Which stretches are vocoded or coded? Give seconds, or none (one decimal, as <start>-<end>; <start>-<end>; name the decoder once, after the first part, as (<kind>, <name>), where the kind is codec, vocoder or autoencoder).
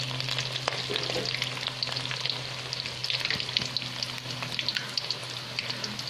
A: none